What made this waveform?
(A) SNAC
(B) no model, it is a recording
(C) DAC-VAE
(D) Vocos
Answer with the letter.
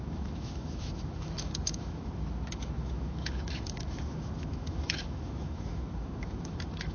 C